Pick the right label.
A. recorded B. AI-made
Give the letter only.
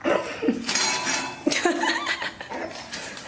A